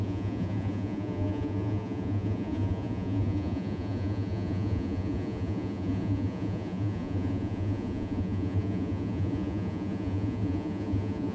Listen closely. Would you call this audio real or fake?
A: fake